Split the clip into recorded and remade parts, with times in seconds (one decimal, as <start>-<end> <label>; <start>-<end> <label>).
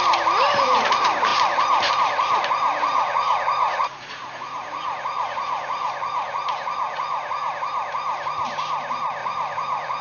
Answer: 0.0-2.9 recorded; 2.9-7.5 remade; 7.5-9.2 recorded; 9.2-10.0 remade